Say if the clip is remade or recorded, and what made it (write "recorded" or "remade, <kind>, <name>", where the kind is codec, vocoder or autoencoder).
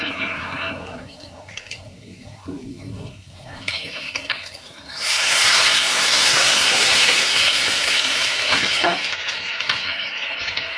remade, codec, SNAC